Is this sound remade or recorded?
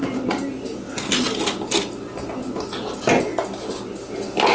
recorded